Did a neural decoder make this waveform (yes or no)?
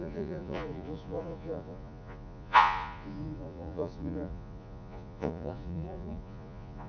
yes